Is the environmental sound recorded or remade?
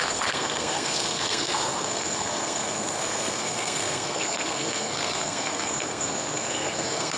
remade